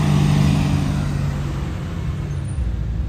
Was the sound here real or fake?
real